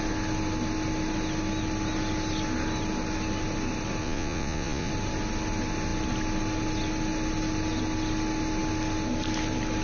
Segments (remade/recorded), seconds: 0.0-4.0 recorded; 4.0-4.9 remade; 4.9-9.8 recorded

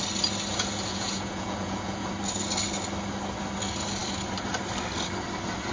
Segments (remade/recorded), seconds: 0.0-0.5 recorded; 0.5-2.1 remade; 2.1-5.7 recorded

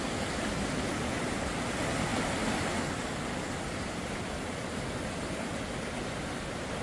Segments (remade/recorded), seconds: 0.0-6.8 recorded

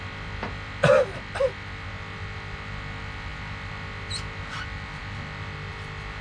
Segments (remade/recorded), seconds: 0.0-6.2 recorded

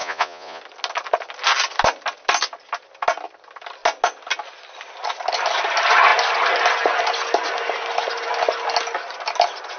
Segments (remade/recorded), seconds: 0.0-0.6 remade; 0.6-9.8 recorded